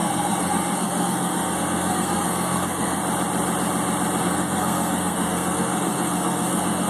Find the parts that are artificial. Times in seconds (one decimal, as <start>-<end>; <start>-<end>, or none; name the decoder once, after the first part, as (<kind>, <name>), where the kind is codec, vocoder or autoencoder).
0.0-3.0 (codec, SNAC); 4.2-6.9